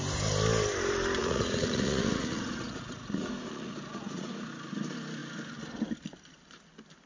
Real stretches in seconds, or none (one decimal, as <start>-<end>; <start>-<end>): 0.0-1.2; 4.5-7.1